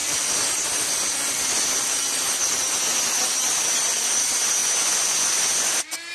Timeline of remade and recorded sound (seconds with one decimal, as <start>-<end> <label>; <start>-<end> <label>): 0.0-4.6 recorded; 4.6-5.5 remade; 5.5-6.1 recorded